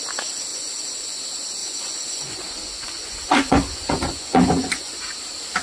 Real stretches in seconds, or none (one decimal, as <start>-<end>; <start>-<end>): 0.0-0.5; 1.2-1.6; 5.0-5.6